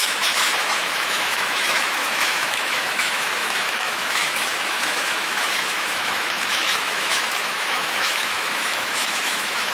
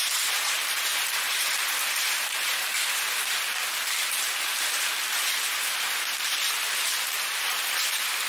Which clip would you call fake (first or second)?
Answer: first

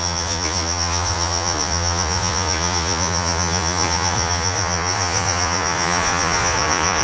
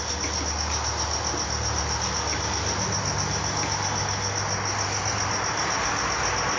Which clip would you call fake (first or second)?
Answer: first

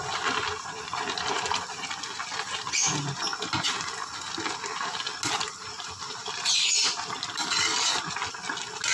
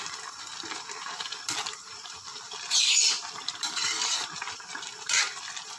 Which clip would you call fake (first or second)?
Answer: second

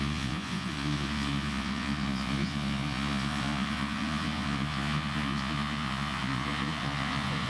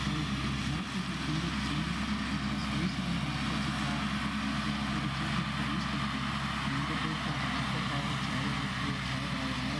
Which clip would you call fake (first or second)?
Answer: first